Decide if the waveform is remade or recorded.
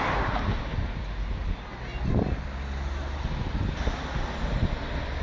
recorded